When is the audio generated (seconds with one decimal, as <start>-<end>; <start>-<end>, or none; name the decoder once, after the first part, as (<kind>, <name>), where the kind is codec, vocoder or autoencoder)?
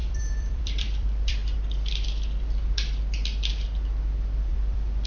0.0-1.4 (vocoder, BigVGAN v2); 4.5-5.1